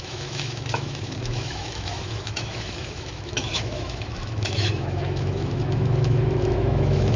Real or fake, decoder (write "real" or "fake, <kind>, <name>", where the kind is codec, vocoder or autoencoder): fake, autoencoder, DAC-VAE